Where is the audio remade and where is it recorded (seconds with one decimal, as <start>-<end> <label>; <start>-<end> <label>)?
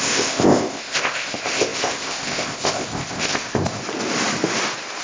0.0-3.8 remade; 3.8-5.0 recorded